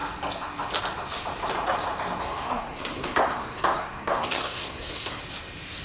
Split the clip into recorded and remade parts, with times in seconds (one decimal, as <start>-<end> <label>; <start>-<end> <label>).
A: 0.0-2.2 recorded; 2.2-5.2 remade; 5.2-5.8 recorded